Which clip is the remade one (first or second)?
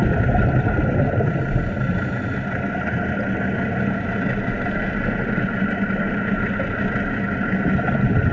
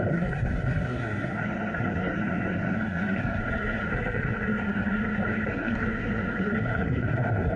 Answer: second